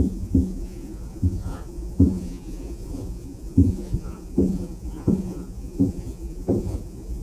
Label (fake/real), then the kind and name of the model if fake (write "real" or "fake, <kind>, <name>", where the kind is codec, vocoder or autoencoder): fake, vocoder, Vocos